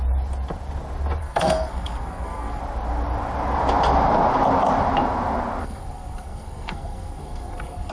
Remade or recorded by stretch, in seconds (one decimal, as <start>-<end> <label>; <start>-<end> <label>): 0.0-1.2 recorded; 1.2-2.6 remade; 2.6-5.6 recorded; 5.6-7.9 remade